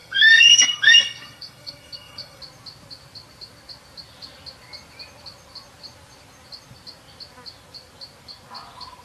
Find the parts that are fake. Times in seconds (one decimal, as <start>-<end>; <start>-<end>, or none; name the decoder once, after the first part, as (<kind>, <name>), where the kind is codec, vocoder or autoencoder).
0.0-2.4 (codec, SNAC)